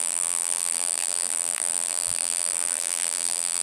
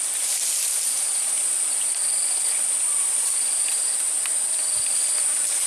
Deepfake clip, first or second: first